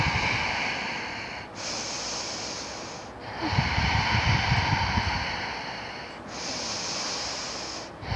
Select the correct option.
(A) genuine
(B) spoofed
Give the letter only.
A